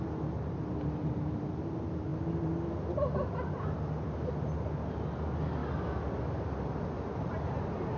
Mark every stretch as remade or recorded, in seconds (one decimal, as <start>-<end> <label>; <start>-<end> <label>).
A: 0.0-8.0 recorded